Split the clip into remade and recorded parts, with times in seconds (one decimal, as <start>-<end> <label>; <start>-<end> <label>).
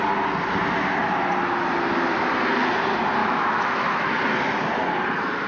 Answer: 0.0-3.2 recorded; 3.2-4.1 remade; 4.1-5.5 recorded